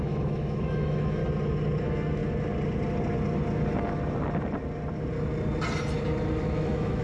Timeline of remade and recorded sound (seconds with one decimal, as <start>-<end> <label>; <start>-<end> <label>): 0.0-1.2 remade; 1.2-1.8 recorded; 1.8-2.2 remade; 2.2-6.4 recorded; 6.4-7.0 remade